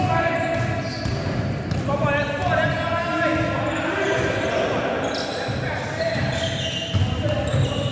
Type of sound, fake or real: real